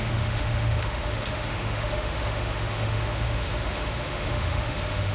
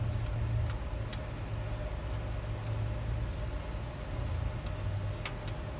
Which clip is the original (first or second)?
second